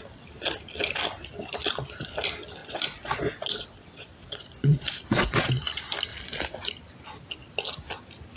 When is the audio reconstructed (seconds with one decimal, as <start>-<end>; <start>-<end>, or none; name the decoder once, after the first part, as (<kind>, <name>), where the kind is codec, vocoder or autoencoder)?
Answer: 2.6-5.5 (vocoder, Vocos)